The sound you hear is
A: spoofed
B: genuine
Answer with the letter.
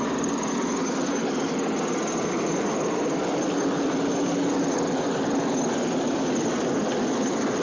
B